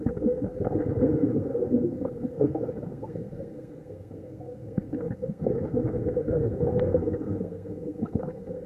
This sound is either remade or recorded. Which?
remade